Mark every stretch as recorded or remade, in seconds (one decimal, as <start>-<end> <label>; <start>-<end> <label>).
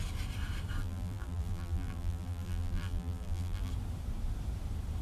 0.0-0.8 recorded; 0.8-3.7 remade; 3.7-5.0 recorded